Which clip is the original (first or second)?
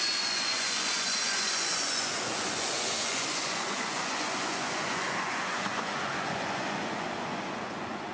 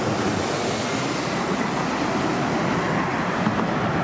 second